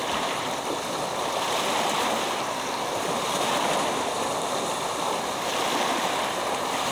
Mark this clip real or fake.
fake